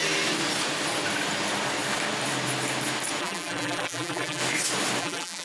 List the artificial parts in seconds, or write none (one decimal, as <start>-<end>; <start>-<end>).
3.2-4.4; 5.0-5.4